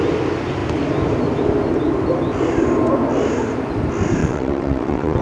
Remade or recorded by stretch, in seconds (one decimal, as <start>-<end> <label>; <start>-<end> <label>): 0.0-4.2 recorded; 4.2-5.2 remade